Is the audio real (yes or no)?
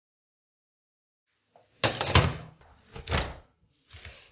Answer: yes